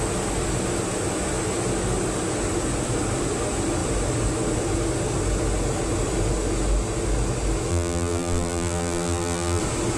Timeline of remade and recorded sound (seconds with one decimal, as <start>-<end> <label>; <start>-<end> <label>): 0.0-7.7 recorded; 7.7-9.6 remade; 9.6-10.0 recorded